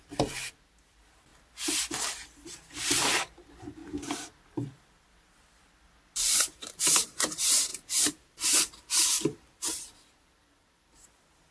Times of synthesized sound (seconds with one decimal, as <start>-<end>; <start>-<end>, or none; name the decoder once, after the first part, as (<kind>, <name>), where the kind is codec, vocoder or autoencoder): 3.8-6.9 (vocoder, BigVGAN v2); 7.7-10.9